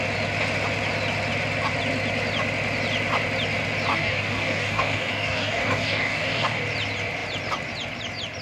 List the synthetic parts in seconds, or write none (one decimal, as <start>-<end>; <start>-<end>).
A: 3.9-6.6